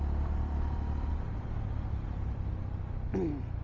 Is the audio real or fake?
real